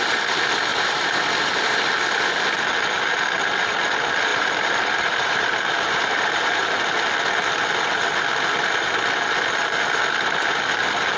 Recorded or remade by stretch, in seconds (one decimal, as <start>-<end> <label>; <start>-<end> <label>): 0.0-0.7 recorded; 0.7-2.0 remade; 2.0-4.3 recorded; 4.3-6.7 remade; 6.7-11.2 recorded